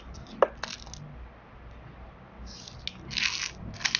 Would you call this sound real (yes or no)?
yes